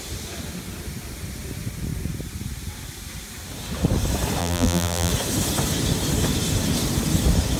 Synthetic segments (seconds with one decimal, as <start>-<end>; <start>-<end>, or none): 4.4-5.1